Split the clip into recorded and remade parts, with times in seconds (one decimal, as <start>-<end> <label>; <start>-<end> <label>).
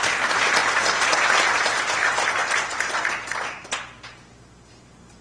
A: 0.0-5.2 recorded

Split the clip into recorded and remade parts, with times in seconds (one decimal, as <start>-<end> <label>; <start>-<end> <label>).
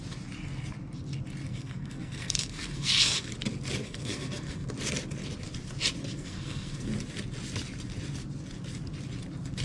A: 0.0-1.5 recorded; 1.5-3.3 remade; 3.3-3.8 recorded; 3.8-4.7 remade; 4.7-6.1 recorded; 6.1-6.9 remade; 6.9-9.6 recorded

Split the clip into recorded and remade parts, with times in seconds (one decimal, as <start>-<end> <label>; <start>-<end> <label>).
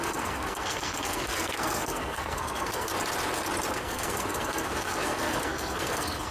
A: 0.0-2.9 remade; 2.9-3.7 recorded; 3.7-6.3 remade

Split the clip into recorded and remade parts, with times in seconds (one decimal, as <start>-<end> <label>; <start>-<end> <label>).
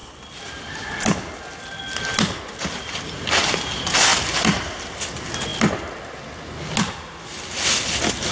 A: 0.0-8.3 recorded